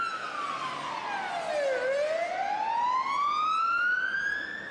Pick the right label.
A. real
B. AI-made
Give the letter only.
A